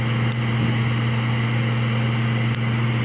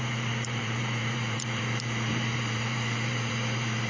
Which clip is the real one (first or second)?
first